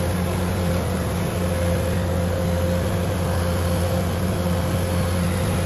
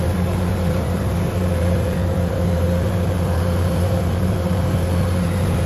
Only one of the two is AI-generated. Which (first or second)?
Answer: second